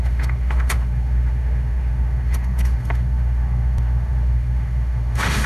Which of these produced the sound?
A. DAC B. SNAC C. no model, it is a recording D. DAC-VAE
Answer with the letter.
D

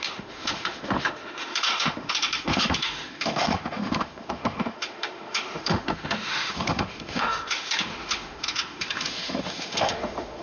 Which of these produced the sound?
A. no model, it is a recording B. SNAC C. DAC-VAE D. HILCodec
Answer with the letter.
C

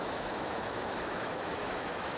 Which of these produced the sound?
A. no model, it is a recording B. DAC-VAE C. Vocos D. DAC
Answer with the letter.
B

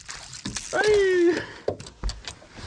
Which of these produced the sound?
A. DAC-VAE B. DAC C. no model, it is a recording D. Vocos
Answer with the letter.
C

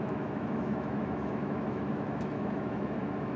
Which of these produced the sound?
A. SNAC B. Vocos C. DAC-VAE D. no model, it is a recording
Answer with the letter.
C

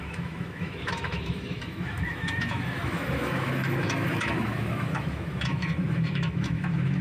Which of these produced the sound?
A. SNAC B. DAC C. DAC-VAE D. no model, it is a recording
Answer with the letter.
C